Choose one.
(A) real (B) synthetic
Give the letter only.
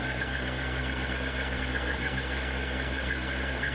B